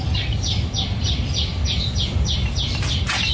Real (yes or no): yes